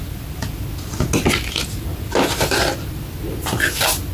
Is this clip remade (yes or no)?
no